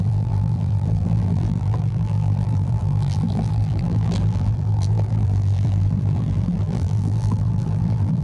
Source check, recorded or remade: remade